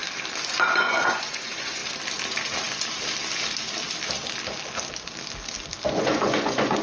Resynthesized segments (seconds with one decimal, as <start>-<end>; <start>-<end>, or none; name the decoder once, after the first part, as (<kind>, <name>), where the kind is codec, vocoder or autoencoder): 0.7-1.8 (vocoder, Vocos); 5.9-6.8